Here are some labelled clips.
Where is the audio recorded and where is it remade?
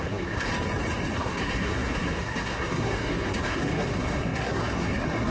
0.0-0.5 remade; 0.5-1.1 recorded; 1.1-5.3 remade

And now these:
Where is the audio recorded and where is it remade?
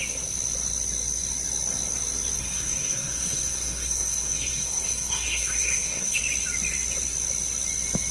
0.0-2.4 recorded; 2.4-6.2 remade; 6.2-8.1 recorded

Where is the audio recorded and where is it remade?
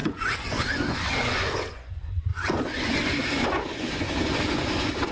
0.0-5.1 remade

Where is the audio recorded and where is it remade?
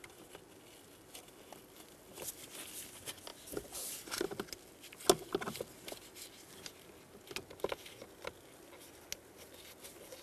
0.0-10.2 recorded